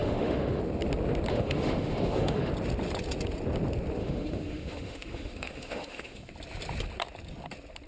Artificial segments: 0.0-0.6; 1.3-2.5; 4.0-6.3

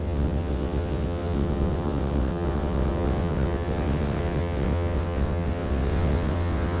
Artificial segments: 0.0-6.8

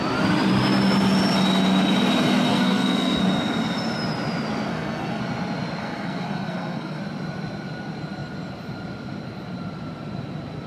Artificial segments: 2.5-3.2; 4.7-5.2; 5.8-7.0

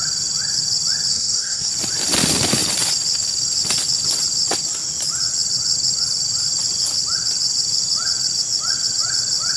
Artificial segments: 1.1-1.7

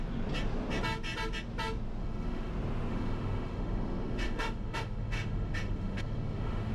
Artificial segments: 2.0-2.5; 2.9-6.7

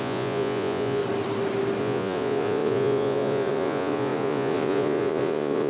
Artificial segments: 0.0-1.0; 1.8-5.7